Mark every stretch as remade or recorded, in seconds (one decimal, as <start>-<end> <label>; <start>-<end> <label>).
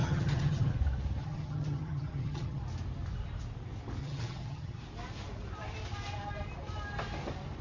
0.0-0.7 remade; 0.7-1.2 recorded; 1.2-2.6 remade; 2.6-4.0 recorded; 4.0-4.8 remade; 4.8-7.6 recorded